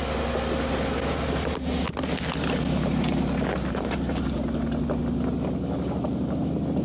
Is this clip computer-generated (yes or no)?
no